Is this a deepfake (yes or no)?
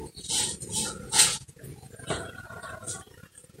yes